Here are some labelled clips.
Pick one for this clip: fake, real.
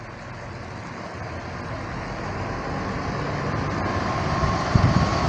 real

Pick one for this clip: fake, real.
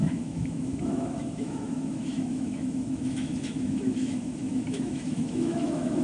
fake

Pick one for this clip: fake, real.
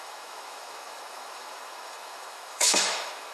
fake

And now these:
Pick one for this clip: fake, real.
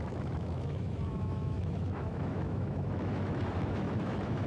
fake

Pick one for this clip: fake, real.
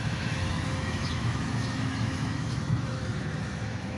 fake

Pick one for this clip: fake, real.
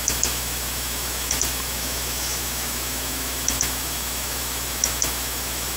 fake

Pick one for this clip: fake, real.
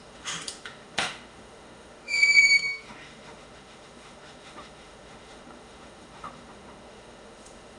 fake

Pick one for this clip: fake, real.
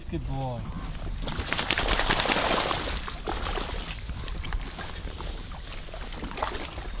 real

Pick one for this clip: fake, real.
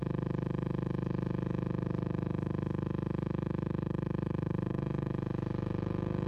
fake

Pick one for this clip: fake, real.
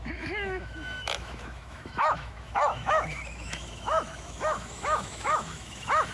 fake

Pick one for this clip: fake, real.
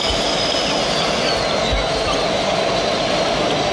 real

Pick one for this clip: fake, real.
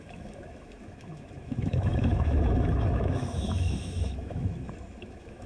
fake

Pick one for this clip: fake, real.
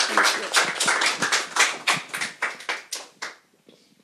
real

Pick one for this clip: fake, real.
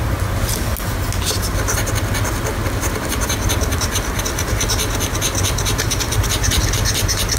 real